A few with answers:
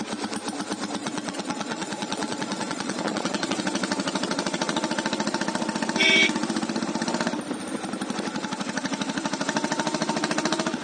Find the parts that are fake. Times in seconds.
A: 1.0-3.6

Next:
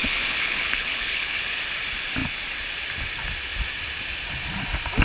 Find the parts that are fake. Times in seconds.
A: 0.0-1.6

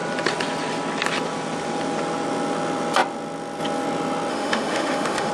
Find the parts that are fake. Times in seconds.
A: 4.3-5.3

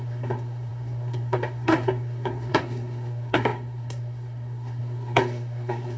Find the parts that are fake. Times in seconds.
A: 0.0-6.0

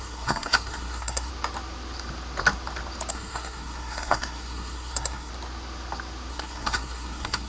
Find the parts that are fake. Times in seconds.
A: 0.0-1.3; 3.1-5.3; 6.3-7.5

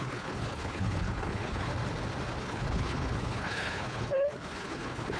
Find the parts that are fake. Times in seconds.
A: 0.0-1.7; 2.4-5.2